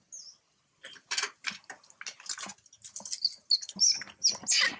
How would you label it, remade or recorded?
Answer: recorded